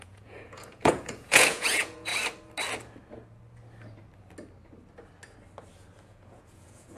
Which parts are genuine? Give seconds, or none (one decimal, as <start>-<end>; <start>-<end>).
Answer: 2.1-6.0